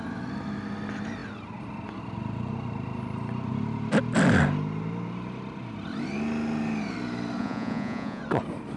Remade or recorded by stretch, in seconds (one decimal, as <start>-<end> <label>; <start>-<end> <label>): 0.0-7.4 recorded; 7.4-8.2 remade; 8.2-8.8 recorded